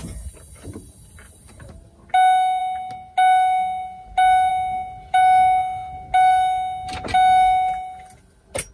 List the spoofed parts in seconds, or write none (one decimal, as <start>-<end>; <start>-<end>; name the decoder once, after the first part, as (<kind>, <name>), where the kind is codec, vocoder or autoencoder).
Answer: none